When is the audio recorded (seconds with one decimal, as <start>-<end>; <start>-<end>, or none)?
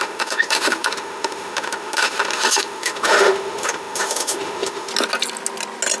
4.9-6.0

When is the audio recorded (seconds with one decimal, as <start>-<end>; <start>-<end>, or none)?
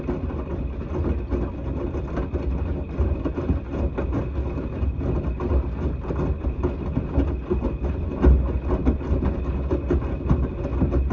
0.0-11.1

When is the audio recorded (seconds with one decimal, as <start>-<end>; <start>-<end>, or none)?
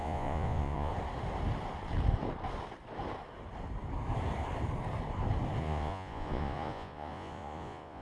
0.9-5.6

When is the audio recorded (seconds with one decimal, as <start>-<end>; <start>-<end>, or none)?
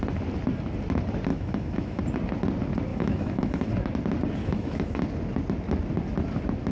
0.0-1.3; 2.0-2.9; 3.7-4.4; 5.0-6.7